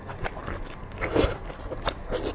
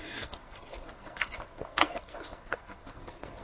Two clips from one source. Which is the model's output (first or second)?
second